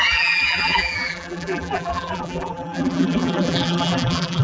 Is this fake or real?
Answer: fake